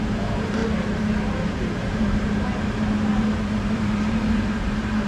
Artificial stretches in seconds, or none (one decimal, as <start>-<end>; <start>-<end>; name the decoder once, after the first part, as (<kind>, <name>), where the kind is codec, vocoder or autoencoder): 0.0-5.1 (vocoder, BigVGAN v2)